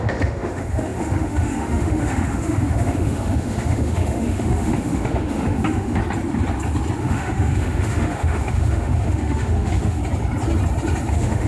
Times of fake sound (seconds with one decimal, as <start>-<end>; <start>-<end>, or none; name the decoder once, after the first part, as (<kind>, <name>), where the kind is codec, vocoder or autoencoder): 0.0-6.0 (autoencoder, DAC-VAE); 7.0-10.0; 11.1-11.5